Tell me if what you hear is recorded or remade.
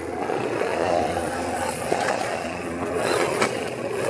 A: remade